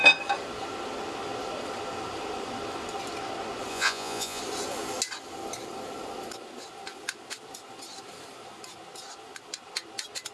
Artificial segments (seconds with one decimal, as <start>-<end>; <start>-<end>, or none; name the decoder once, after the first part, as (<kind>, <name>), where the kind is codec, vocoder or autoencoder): 3.7-4.4 (vocoder, Vocos)